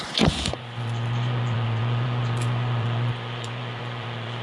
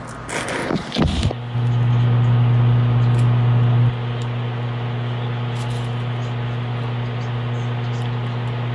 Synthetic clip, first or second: first